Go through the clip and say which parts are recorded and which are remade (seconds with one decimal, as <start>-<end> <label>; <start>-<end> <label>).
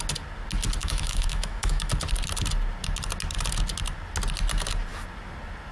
0.0-0.8 recorded; 0.8-1.9 remade; 1.9-5.7 recorded